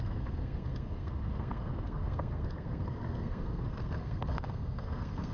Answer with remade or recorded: remade